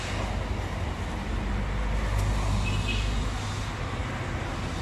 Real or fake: real